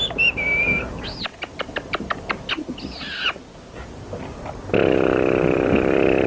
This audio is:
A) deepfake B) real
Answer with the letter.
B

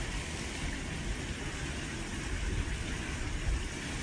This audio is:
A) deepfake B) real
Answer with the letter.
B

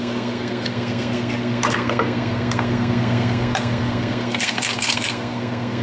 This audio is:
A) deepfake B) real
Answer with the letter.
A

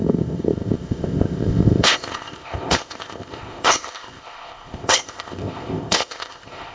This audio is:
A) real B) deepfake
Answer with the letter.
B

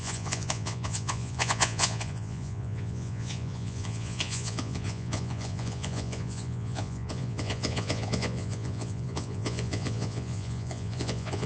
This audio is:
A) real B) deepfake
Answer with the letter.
B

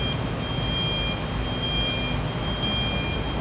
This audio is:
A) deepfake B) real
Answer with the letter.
B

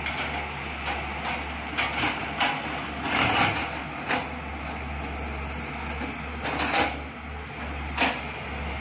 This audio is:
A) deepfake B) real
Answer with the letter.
B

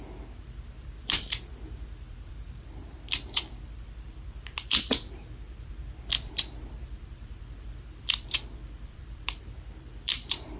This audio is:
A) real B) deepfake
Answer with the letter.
B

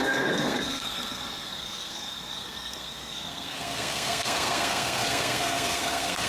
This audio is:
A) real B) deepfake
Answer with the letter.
B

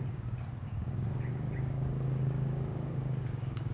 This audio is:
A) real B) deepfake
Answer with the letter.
B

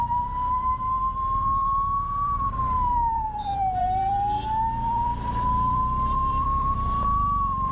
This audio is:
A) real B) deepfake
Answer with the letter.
B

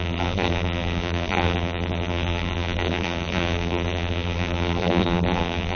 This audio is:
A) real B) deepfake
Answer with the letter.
B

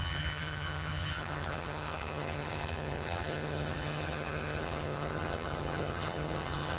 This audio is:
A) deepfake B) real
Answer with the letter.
A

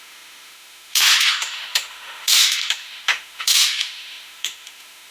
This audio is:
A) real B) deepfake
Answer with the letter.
B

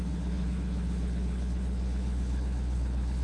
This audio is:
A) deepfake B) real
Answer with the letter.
A